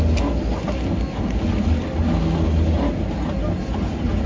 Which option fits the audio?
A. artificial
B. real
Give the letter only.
B